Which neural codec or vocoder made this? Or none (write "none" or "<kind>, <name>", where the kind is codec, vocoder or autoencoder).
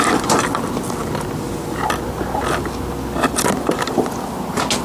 none